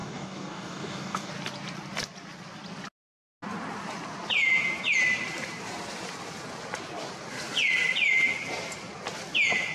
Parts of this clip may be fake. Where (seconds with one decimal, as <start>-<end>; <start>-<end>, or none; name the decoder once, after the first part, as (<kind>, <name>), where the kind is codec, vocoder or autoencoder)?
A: 0.0-1.3 (codec, DAC)